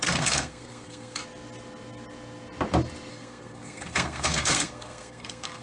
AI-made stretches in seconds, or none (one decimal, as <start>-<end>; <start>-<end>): 0.0-1.2; 3.1-5.6